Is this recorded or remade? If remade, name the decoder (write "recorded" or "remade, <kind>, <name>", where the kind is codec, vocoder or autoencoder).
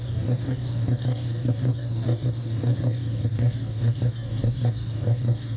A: remade, codec, DAC